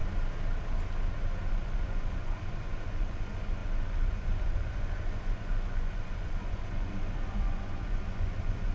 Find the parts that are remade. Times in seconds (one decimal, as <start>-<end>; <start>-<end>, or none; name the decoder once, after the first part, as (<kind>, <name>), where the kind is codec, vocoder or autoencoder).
1.5-8.7 (vocoder, Vocos)